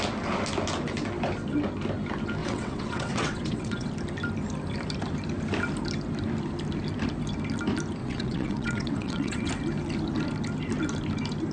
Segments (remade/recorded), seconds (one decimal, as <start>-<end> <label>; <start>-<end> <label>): 0.0-2.4 recorded; 2.4-3.9 remade; 3.9-8.0 recorded; 8.0-9.5 remade; 9.5-11.5 recorded